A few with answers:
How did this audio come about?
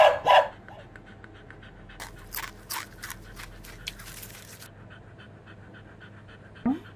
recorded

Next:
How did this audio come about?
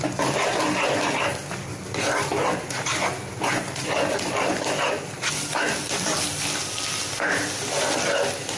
recorded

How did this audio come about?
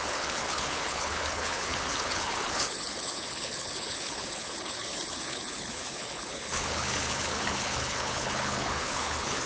remade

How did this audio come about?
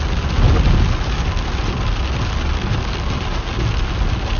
recorded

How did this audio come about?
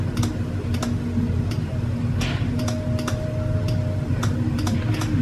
recorded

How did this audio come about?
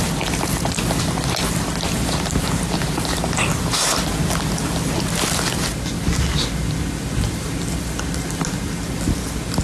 recorded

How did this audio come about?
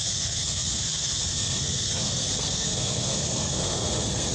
remade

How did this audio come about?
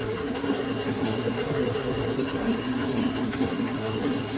remade